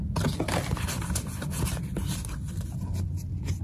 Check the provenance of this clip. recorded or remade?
recorded